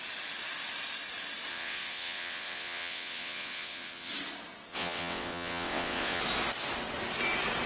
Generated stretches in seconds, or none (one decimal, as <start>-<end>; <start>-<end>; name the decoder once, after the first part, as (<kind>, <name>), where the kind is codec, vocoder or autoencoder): 1.5-4.1 (vocoder, WaveNeXt); 4.7-6.2